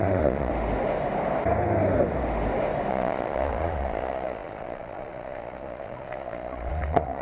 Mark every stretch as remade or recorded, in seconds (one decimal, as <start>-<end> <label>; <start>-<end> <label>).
0.0-0.5 remade; 0.5-2.9 recorded; 2.9-7.2 remade

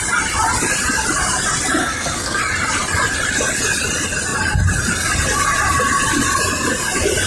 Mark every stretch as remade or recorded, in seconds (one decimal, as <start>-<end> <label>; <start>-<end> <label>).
0.0-1.8 recorded; 1.8-2.4 remade; 2.4-7.3 recorded

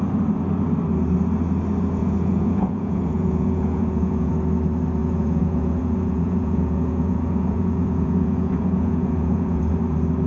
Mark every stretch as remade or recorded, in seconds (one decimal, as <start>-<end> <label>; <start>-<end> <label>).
0.0-2.0 recorded; 2.0-4.3 remade; 4.3-5.0 recorded; 5.0-9.6 remade; 9.6-10.3 recorded

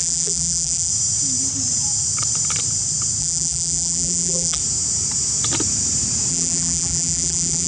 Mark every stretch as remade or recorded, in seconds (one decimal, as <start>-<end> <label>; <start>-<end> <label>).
0.0-0.9 remade; 0.9-3.2 recorded; 3.2-4.6 remade; 4.6-6.3 recorded; 6.3-7.7 remade

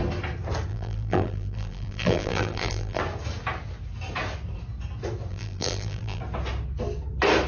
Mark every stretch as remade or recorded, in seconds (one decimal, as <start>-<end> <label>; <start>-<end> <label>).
0.0-0.7 recorded; 0.7-3.0 remade; 3.0-5.3 recorded; 5.3-6.2 remade; 6.2-7.5 recorded

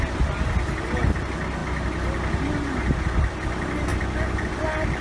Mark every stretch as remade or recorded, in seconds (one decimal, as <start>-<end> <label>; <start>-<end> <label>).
0.0-3.9 recorded; 3.9-4.5 remade; 4.5-5.0 recorded

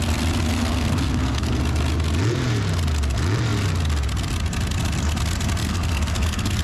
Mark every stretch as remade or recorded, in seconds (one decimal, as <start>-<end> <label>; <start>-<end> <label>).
0.0-0.5 recorded; 0.5-1.6 remade; 1.6-5.6 recorded; 5.6-6.6 remade

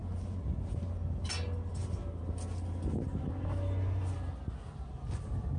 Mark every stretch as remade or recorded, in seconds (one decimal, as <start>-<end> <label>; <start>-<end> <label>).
0.0-5.6 recorded